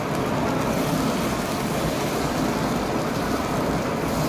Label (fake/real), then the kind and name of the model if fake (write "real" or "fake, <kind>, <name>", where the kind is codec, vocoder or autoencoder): real